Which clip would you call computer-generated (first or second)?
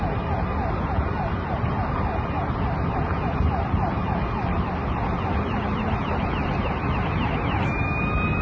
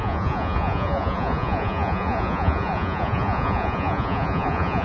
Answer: second